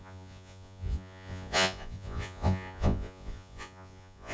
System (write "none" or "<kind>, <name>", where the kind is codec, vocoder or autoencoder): vocoder, Vocos